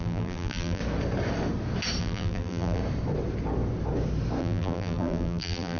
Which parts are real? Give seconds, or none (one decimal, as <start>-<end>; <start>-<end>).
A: 0.8-2.0; 2.8-4.4